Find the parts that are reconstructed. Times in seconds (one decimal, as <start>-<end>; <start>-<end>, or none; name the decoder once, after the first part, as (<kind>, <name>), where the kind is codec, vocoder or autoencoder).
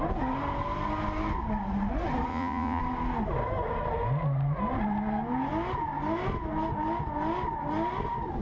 2.3-2.8 (vocoder, Vocos)